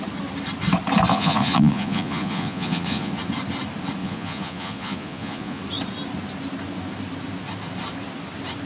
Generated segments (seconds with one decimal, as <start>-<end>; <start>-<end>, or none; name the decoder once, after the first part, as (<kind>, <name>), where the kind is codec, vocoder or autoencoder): 1.1-3.1 (vocoder, Vocos); 4.0-5.6